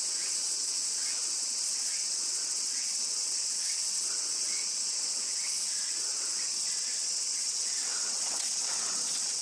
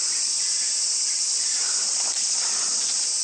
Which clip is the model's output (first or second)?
first